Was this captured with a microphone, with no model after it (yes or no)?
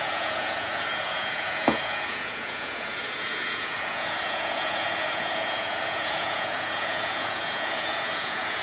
no